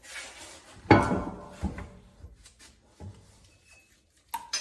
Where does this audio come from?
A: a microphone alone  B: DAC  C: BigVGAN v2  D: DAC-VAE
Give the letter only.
A